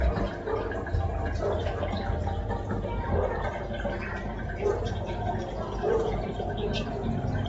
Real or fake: real